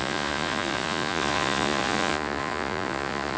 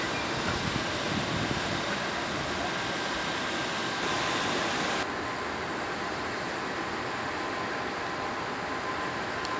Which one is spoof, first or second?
first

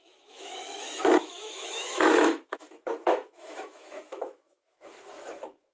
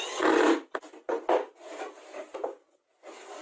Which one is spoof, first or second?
first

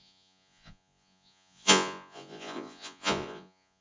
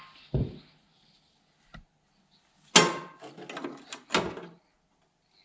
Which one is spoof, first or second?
first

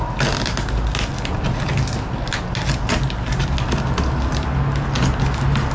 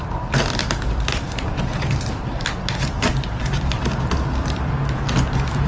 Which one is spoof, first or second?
second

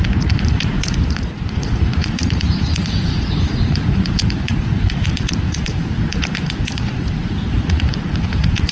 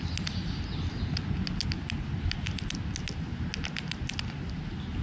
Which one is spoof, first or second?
first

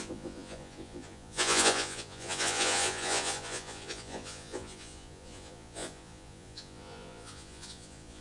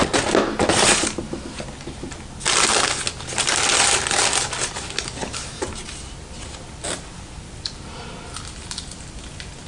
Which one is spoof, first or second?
first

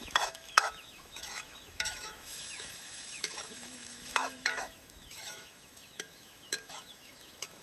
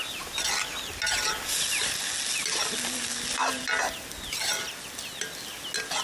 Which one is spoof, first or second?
first